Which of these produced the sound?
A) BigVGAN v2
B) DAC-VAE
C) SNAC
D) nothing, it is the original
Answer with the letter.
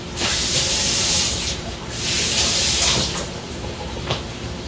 A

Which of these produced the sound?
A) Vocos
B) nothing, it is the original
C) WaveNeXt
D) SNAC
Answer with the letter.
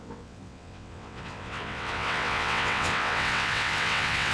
C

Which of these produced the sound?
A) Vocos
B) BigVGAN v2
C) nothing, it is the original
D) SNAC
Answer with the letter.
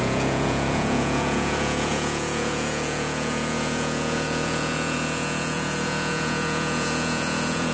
A